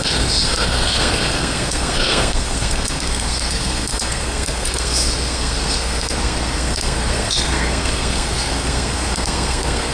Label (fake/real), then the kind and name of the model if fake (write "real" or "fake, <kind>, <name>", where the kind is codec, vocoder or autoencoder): fake, codec, SNAC